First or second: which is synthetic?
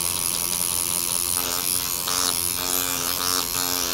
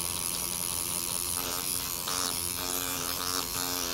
second